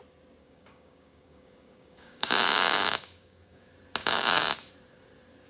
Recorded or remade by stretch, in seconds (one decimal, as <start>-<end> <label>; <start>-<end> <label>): 0.0-0.4 recorded; 0.4-3.6 remade; 3.6-4.0 recorded; 4.0-4.7 remade; 4.7-5.5 recorded